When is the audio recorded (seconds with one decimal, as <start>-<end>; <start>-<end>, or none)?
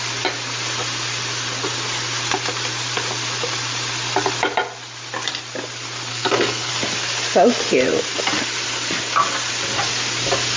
0.0-6.1; 6.7-10.6